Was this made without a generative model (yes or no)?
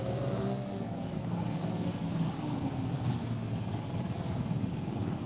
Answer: no